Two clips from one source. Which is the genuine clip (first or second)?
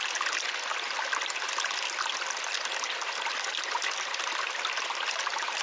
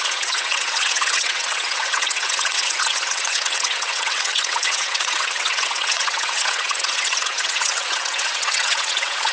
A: first